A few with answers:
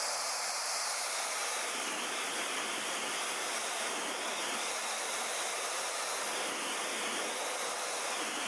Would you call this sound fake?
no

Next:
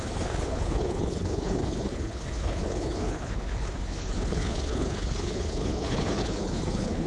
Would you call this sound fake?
yes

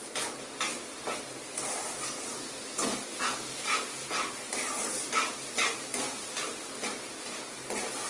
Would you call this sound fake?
no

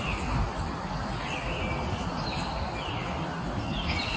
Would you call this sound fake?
no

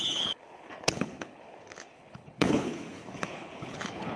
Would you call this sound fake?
yes